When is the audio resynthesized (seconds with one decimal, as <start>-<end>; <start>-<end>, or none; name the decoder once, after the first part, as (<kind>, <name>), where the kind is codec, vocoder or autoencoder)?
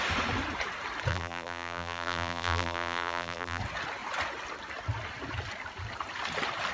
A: 1.1-3.6 (vocoder, BigVGAN v2)